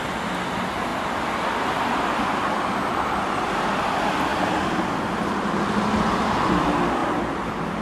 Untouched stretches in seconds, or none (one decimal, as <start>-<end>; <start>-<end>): 0.0-7.0

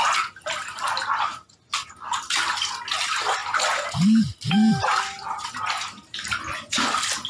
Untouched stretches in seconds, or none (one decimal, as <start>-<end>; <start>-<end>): none